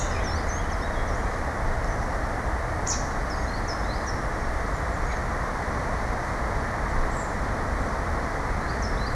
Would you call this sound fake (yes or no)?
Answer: no